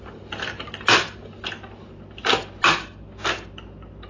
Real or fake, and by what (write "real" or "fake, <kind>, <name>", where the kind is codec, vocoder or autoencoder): real